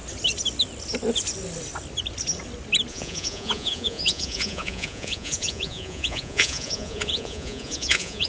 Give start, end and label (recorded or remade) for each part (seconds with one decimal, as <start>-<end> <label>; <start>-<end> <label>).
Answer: 0.0-2.9 recorded; 2.9-8.3 remade